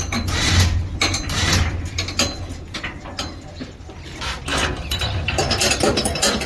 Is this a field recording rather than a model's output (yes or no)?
yes